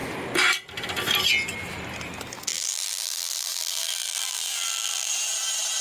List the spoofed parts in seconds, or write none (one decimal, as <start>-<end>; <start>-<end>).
2.5-5.1

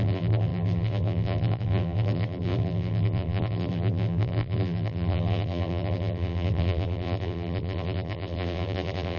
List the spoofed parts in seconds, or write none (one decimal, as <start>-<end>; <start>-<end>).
0.0-9.2

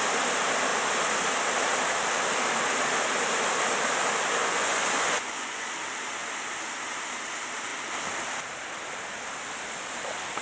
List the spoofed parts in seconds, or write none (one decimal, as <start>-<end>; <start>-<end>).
4.4-5.7

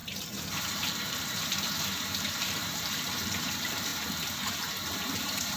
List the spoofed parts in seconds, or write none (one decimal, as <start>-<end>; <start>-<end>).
0.0-3.9; 4.5-5.6

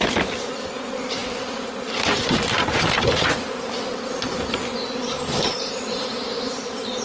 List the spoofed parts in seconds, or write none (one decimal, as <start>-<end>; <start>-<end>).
0.0-6.1